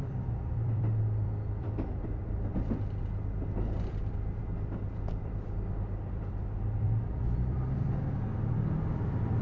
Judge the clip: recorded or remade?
remade